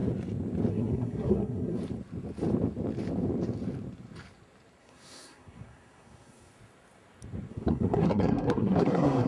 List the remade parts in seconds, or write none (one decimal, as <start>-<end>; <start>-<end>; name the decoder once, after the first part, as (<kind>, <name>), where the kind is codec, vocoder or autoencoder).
0.7-1.8 (codec, SNAC); 4.8-6.5; 7.5-9.3